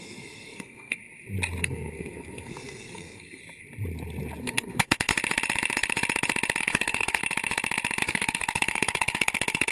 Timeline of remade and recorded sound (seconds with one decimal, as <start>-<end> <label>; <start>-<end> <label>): 0.0-1.0 remade; 1.0-1.6 recorded; 1.6-3.4 remade; 3.4-4.4 recorded; 4.4-5.1 remade; 5.1-6.6 recorded; 6.6-7.2 remade; 7.2-8.0 recorded; 8.0-9.7 remade